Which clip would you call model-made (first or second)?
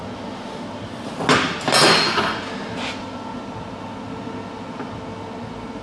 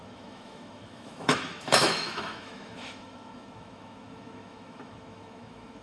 second